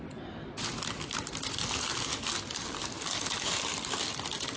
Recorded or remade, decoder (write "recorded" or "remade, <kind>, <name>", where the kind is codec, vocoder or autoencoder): recorded